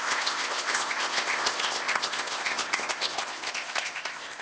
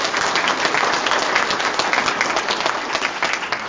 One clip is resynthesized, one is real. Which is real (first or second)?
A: second